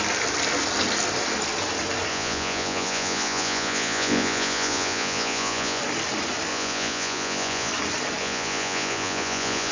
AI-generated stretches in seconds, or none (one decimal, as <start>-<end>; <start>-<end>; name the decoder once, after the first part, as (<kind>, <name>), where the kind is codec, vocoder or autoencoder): 2.1-5.8 (vocoder, Vocos); 6.5-7.7; 8.2-9.7